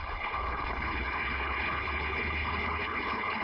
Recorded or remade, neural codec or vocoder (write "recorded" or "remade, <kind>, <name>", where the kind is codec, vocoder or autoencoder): remade, codec, HILCodec